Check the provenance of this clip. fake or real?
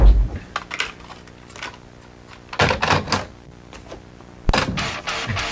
real